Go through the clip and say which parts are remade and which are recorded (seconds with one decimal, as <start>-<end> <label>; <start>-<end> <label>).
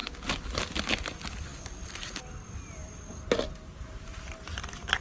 0.0-5.0 recorded